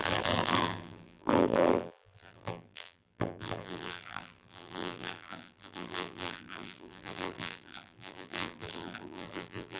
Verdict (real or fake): fake